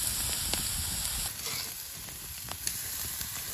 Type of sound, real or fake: real